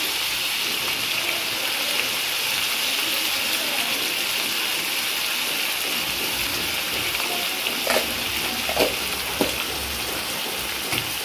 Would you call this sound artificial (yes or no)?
no